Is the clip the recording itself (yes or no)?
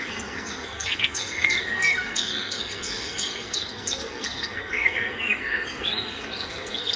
no